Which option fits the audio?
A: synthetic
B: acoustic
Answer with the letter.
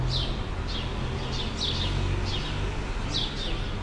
B